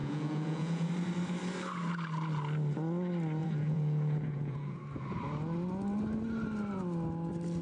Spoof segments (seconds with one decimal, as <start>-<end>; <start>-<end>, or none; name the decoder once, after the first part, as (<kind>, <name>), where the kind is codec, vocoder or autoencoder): 0.0-0.9 (vocoder, Vocos); 3.4-4.8